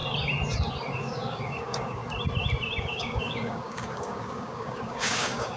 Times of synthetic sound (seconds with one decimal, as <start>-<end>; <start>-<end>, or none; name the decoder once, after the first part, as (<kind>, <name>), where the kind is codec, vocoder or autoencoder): 1.0-2.0 (codec, DAC); 2.8-5.6

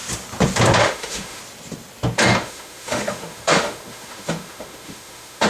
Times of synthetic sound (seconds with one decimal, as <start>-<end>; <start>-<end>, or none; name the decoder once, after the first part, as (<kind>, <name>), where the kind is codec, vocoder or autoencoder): 0.8-1.4 (autoencoder, DAC-VAE); 2.4-5.5

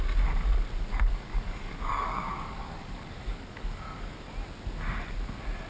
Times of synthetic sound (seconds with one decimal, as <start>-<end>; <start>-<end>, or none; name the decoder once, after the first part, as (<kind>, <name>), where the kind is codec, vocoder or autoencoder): 0.9-4.3 (codec, DAC)

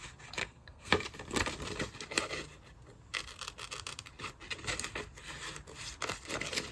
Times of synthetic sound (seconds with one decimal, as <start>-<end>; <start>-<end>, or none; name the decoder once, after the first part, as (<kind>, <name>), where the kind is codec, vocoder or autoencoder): 0.4-0.9 (codec, SNAC)